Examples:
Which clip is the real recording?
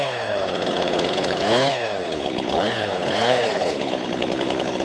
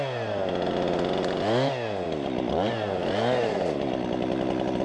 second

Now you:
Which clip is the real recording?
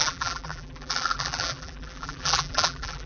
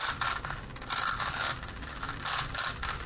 second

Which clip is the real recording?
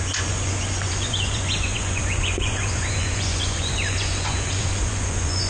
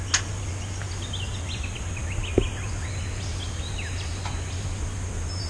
second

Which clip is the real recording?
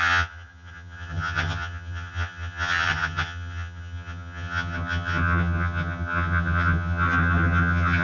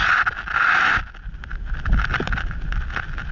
second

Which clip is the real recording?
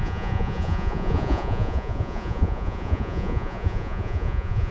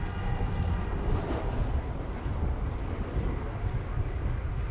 second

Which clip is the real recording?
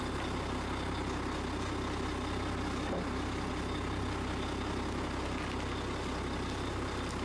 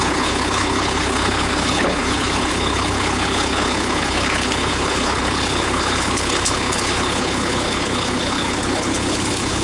first